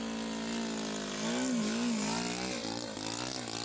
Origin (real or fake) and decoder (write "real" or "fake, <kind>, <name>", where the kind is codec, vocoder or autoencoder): real